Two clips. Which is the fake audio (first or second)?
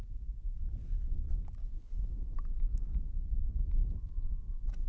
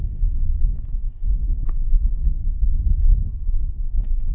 second